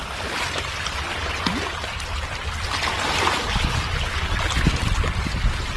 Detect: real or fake real